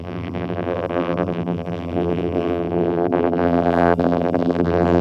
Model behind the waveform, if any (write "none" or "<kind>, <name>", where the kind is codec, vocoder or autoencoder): vocoder, BigVGAN v2